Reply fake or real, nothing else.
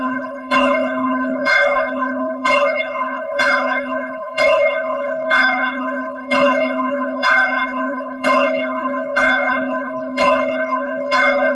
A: fake